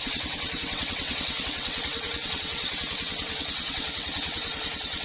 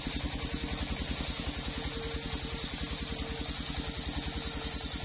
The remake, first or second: first